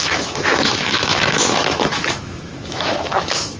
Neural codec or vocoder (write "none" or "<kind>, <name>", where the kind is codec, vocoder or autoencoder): autoencoder, DAC-VAE